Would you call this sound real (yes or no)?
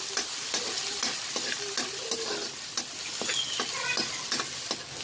yes